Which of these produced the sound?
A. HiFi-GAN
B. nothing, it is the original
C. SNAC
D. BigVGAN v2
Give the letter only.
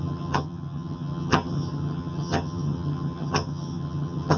A